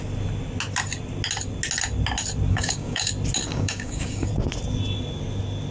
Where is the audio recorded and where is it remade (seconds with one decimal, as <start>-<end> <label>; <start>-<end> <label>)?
0.0-2.5 recorded; 2.5-3.1 remade; 3.1-3.5 recorded; 3.5-4.3 remade; 4.3-5.7 recorded